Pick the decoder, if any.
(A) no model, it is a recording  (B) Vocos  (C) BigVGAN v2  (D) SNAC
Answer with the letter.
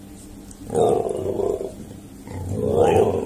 A